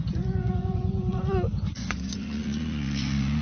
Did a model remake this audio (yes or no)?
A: yes